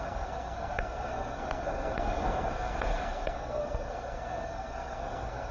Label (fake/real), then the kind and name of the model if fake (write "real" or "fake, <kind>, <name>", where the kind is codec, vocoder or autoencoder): fake, codec, SNAC